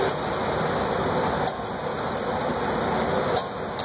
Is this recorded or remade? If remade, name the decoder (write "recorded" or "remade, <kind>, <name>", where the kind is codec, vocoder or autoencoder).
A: recorded